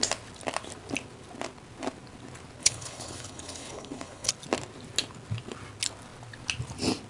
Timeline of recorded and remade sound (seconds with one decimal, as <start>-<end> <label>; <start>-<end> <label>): 0.0-2.6 recorded; 2.6-4.3 remade; 4.3-7.1 recorded